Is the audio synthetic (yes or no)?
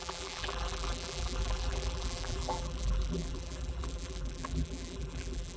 yes